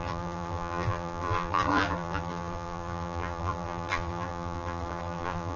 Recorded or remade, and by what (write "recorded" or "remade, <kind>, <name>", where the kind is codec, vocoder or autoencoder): remade, vocoder, BigVGAN v2